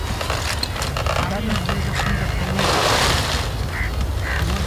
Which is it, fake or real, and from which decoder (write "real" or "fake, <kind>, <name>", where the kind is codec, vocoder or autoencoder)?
real